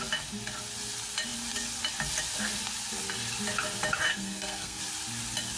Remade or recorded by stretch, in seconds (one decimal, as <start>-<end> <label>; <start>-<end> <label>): 0.0-4.1 recorded; 4.1-4.8 remade; 4.8-5.6 recorded